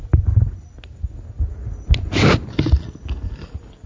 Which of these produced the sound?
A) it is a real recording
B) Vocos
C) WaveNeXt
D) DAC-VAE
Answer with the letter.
A